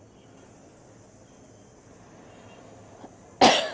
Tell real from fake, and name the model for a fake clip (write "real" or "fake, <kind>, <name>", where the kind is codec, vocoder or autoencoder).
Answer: real